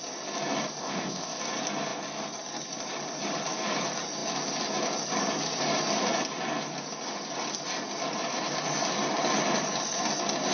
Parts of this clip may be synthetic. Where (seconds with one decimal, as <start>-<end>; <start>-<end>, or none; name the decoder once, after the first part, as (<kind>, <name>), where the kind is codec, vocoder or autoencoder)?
0.8-1.4 (codec, ZipCodec)